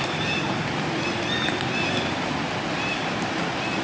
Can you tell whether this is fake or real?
real